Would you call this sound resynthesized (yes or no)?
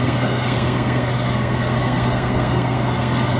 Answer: yes